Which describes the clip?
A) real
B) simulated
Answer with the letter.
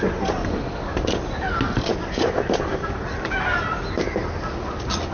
A